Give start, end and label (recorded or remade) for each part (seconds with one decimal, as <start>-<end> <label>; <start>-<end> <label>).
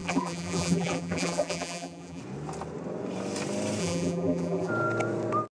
0.0-2.2 remade; 2.2-3.8 recorded; 3.8-4.7 remade; 4.7-5.5 recorded